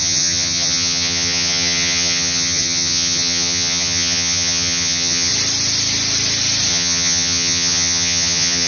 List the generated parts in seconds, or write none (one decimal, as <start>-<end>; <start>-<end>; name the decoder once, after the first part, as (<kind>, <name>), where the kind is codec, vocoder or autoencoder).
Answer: 0.0-5.3 (vocoder, HiFi-GAN); 6.7-8.7